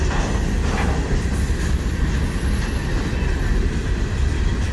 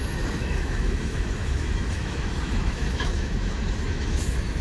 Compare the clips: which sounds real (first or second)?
first